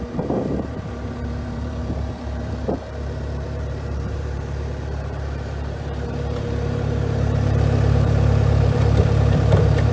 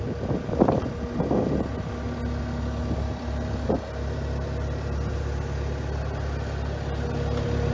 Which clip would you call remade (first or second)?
first